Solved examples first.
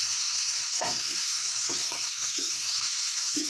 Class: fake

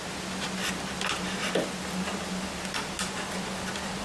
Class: real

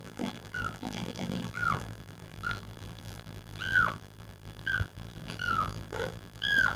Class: fake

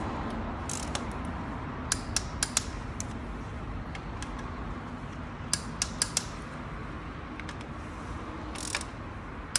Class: real